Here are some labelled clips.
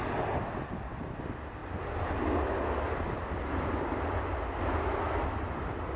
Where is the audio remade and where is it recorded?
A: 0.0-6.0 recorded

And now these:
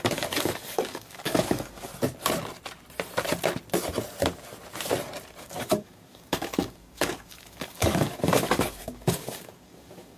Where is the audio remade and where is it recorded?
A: 0.0-1.9 remade; 1.9-5.4 recorded; 5.4-10.2 remade

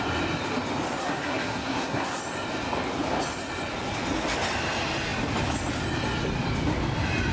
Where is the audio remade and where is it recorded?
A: 0.0-1.0 recorded; 1.0-2.2 remade; 2.2-7.3 recorded

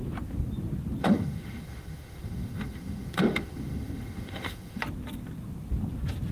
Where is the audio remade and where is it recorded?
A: 0.0-1.0 recorded; 1.0-4.8 remade; 4.8-6.3 recorded

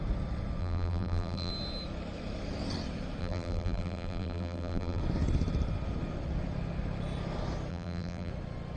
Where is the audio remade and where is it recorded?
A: 0.0-0.6 recorded; 0.6-1.5 remade; 1.5-3.2 recorded; 3.2-5.0 remade; 5.0-7.7 recorded; 7.7-8.3 remade; 8.3-8.8 recorded

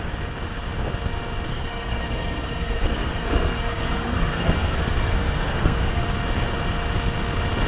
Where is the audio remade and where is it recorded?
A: 0.0-1.5 recorded; 1.5-6.0 remade; 6.0-7.7 recorded

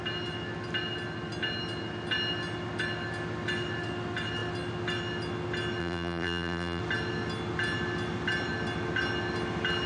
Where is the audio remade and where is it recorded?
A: 0.0-5.8 recorded; 5.8-6.8 remade; 6.8-9.9 recorded